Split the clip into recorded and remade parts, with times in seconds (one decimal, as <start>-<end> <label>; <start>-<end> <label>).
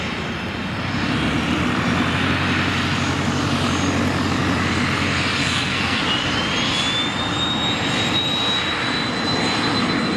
0.0-5.4 recorded; 5.4-6.0 remade; 6.0-10.2 recorded